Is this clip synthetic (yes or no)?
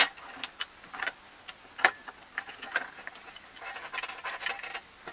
no